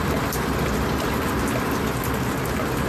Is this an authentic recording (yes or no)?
yes